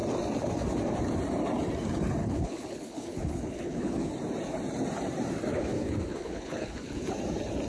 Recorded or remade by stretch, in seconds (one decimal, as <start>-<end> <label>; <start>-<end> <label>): 0.0-2.2 recorded; 2.2-4.1 remade; 4.1-5.5 recorded; 5.5-7.1 remade; 7.1-7.7 recorded